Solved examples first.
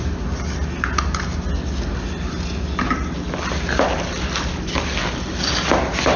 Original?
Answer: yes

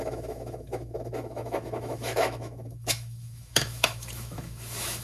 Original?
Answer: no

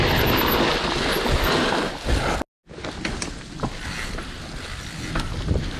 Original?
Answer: yes